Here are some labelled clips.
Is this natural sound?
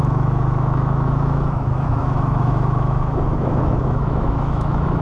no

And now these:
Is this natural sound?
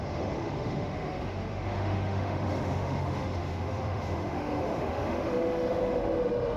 no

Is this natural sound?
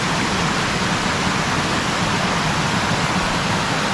yes